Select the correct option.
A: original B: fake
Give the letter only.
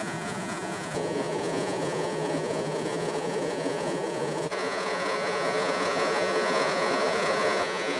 B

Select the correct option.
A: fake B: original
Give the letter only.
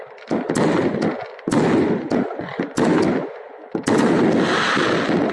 B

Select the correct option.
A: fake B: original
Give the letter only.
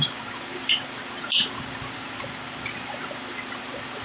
A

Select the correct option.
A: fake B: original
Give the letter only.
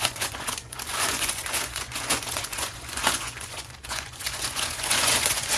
A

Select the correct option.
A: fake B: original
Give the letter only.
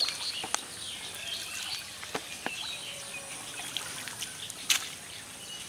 B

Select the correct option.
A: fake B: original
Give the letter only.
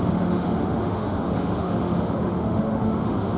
A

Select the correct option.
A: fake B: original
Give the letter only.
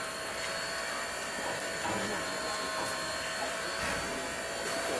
B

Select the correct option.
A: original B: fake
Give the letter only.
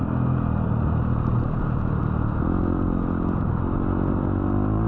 A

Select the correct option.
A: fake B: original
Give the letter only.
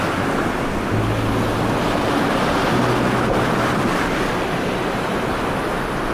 B